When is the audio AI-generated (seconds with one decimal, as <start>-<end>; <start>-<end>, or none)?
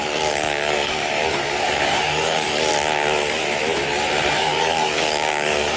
0.0-2.7; 4.3-5.8